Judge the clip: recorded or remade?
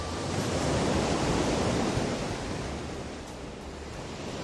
recorded